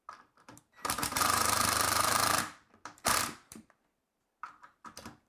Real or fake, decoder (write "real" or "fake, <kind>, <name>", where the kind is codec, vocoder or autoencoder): fake, vocoder, BigVGAN v2